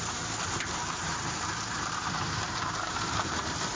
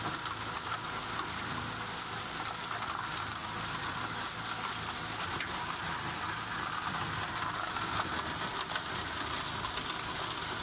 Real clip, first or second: second